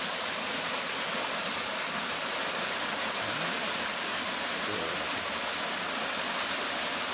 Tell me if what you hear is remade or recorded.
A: recorded